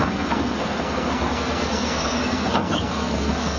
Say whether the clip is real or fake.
fake